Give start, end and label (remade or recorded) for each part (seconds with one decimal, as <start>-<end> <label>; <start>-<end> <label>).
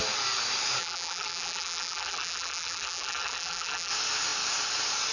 0.0-0.8 recorded; 0.8-3.9 remade; 3.9-5.1 recorded